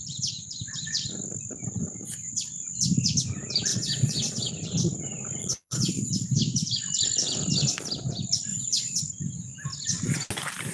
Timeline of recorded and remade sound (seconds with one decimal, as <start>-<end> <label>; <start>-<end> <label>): 0.0-3.7 recorded; 3.7-4.5 remade; 4.5-5.4 recorded; 5.4-6.1 remade; 6.1-8.5 recorded; 8.5-9.0 remade; 9.0-10.7 recorded